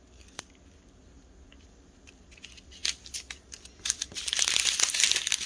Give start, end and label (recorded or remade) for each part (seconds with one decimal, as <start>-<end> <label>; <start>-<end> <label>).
0.0-5.5 recorded